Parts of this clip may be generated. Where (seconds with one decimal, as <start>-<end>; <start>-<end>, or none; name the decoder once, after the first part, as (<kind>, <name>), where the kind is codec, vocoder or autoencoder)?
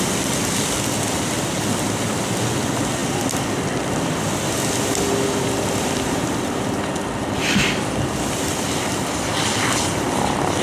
3.0-6.4 (vocoder, BigVGAN v2)